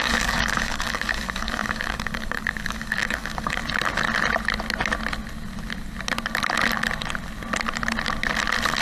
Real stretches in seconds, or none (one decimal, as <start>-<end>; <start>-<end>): 3.6-8.8